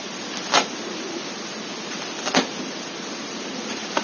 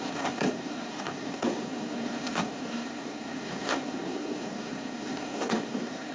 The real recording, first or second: first